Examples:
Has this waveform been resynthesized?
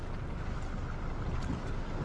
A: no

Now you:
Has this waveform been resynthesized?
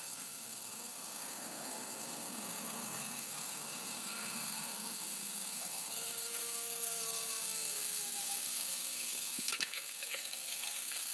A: yes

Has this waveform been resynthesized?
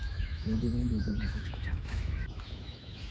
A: yes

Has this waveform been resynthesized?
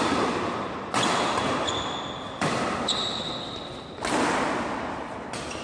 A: no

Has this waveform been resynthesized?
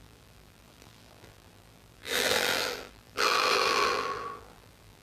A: yes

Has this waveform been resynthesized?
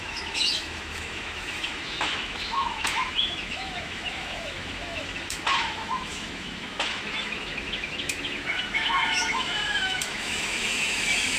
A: yes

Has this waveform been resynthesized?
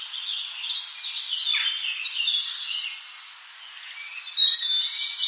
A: no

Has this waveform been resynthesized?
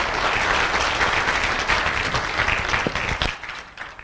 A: no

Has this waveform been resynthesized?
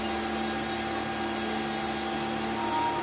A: no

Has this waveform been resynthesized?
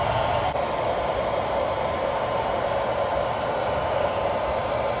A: no